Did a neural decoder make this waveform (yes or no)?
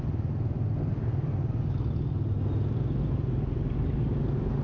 no